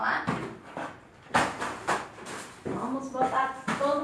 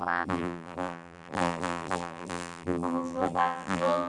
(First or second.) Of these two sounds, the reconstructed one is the second